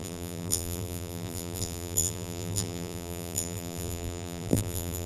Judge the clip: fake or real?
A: fake